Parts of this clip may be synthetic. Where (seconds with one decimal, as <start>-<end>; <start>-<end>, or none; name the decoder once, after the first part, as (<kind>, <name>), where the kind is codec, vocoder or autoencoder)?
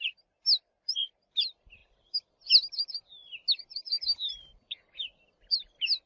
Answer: none